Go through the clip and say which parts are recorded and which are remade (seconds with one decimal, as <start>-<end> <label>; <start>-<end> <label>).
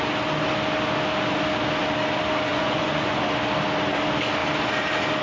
0.0-2.5 recorded; 2.5-3.2 remade; 3.2-5.2 recorded